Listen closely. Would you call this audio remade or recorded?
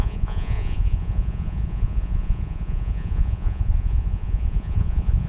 remade